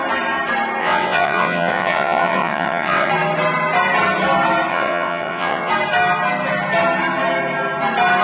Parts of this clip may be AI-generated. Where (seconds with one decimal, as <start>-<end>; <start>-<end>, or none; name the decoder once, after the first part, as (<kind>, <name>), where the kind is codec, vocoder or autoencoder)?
0.8-3.1 (vocoder, WaveNeXt); 4.7-5.7

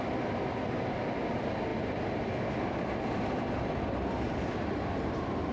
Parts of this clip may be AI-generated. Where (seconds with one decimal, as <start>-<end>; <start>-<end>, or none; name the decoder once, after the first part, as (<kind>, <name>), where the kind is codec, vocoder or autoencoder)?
none

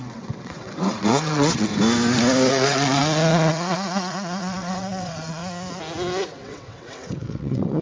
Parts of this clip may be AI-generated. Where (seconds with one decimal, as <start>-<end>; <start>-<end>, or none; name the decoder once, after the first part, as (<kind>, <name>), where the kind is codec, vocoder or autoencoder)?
0.0-1.7 (vocoder, WaveNeXt); 2.5-5.4; 6.3-7.8

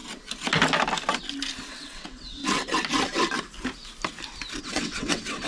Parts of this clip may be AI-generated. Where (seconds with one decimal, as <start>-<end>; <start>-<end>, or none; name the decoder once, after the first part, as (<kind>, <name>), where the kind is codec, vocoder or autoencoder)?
1.7-2.4 (vocoder, WaveNeXt); 4.6-5.5

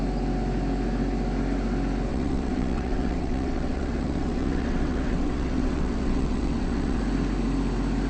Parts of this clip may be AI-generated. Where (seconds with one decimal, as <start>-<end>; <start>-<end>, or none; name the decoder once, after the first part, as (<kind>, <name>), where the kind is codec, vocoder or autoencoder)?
2.1-7.0 (vocoder, WaveNeXt)